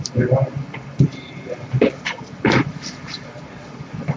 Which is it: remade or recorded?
remade